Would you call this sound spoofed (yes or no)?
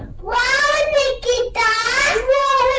yes